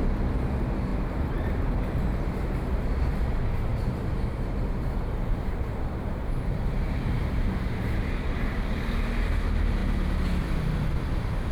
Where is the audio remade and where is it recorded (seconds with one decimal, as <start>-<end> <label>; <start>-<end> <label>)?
0.0-0.9 recorded; 0.9-1.8 remade; 1.8-3.7 recorded; 3.7-8.7 remade; 8.7-11.5 recorded